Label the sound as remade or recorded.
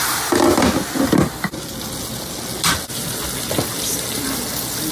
recorded